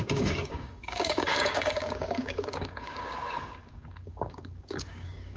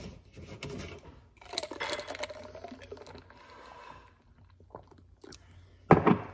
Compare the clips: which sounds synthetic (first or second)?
first